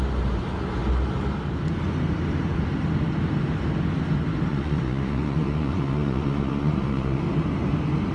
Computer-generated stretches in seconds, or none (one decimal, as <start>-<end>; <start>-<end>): 4.5-7.2